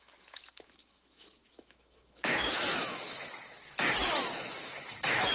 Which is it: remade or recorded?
remade